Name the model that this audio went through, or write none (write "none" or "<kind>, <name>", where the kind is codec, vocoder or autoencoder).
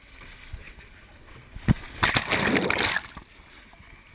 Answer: none